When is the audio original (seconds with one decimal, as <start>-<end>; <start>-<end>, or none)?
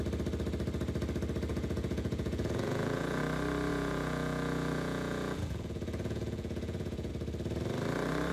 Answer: 0.0-1.5; 3.2-3.7; 7.1-8.3